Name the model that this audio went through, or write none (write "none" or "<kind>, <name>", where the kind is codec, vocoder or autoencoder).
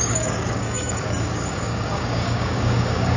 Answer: codec, DAC